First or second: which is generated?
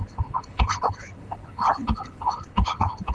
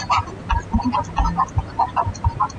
first